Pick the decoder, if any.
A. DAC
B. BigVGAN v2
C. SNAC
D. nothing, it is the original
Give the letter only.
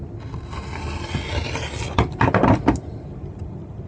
D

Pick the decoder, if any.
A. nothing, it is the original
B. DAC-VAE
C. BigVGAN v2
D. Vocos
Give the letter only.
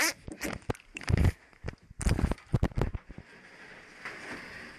A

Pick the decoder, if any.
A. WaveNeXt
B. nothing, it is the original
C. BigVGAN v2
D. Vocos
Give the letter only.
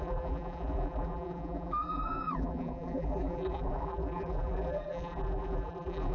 C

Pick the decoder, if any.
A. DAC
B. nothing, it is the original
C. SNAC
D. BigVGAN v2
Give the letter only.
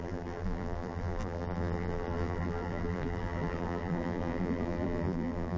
D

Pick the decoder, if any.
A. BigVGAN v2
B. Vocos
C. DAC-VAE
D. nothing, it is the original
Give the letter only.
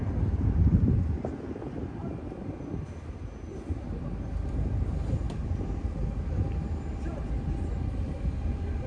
D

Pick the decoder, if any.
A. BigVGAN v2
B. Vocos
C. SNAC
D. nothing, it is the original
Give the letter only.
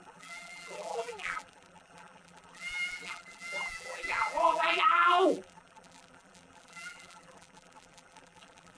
A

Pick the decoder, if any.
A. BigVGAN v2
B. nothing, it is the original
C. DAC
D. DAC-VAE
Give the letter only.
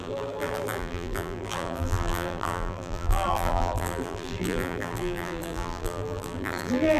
A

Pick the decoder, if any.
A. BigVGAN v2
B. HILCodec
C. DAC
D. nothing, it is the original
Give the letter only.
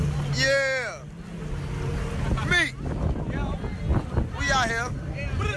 D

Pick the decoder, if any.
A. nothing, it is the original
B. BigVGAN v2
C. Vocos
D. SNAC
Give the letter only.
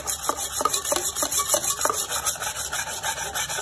A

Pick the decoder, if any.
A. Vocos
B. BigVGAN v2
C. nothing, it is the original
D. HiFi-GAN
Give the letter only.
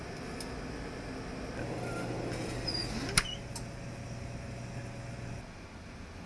C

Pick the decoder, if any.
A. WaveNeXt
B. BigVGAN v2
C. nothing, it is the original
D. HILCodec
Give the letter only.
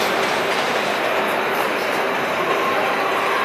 B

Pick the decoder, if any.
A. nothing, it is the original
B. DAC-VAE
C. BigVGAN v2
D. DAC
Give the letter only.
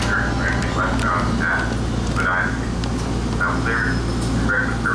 A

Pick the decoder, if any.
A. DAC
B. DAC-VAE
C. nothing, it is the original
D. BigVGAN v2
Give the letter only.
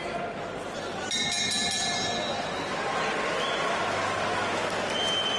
C